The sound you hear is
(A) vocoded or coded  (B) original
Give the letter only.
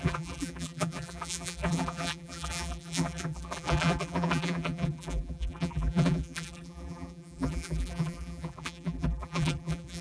A